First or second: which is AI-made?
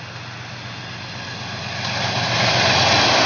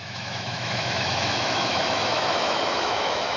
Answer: second